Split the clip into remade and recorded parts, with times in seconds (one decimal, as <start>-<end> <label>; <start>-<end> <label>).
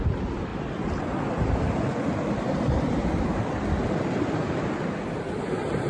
0.0-5.9 recorded